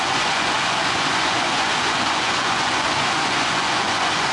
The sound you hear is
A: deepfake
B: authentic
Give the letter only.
A